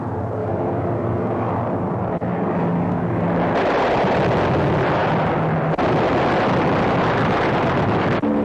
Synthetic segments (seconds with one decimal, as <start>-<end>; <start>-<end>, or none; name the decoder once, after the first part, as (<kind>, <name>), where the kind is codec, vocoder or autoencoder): 0.4-1.5 (codec, DAC); 2.3-3.2